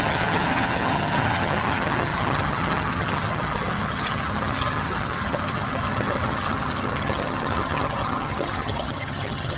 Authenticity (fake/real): fake